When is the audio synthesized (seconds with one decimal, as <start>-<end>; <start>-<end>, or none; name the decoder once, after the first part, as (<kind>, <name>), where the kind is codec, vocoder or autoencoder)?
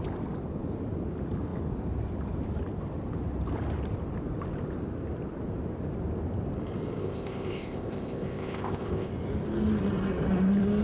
7.0-9.1 (codec, ZipCodec)